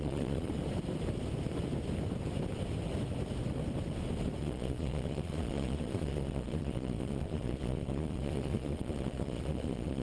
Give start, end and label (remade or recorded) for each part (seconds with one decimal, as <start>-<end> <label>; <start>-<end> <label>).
0.0-0.5 remade; 0.5-4.4 recorded; 4.4-10.0 remade